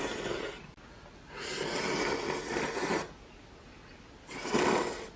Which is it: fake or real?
real